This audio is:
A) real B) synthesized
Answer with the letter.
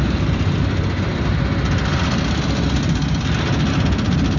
A